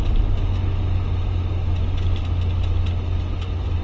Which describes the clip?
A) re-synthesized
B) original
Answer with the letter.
B